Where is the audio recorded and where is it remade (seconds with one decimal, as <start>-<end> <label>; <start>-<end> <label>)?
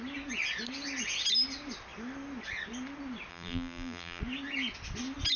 0.0-3.3 recorded; 3.3-4.2 remade; 4.2-5.4 recorded